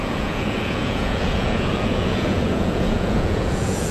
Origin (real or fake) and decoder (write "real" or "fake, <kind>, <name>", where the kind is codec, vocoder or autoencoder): fake, vocoder, Vocos